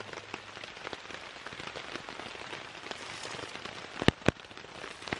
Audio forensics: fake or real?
real